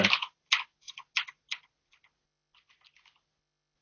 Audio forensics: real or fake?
real